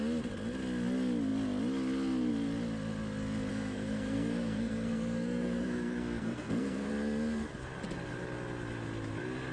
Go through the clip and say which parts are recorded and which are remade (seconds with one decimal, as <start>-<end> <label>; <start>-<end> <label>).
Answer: 0.0-3.5 recorded; 3.5-6.9 remade; 6.9-9.5 recorded